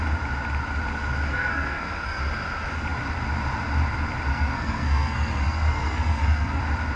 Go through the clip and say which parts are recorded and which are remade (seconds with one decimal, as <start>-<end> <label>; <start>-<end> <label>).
0.0-1.3 recorded; 1.3-2.2 remade; 2.2-4.3 recorded; 4.3-6.6 remade; 6.6-7.0 recorded